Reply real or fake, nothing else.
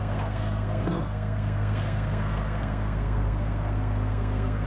fake